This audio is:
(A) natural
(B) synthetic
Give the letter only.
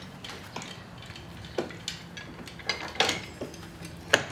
A